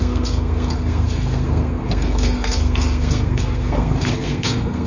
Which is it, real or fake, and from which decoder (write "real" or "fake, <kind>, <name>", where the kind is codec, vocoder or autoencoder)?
fake, codec, SNAC